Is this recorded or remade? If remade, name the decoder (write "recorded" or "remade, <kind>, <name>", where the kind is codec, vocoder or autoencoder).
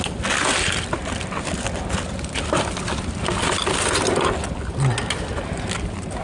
recorded